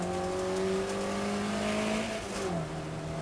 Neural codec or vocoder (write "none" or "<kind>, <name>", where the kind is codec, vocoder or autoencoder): none